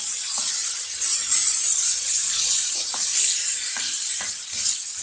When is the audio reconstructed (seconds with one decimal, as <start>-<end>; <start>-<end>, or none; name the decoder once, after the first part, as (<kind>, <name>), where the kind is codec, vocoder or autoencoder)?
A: 1.1-4.1 (vocoder, Vocos)